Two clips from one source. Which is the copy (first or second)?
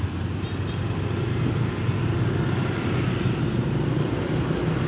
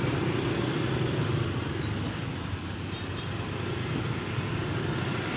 second